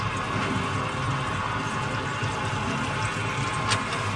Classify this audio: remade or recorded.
recorded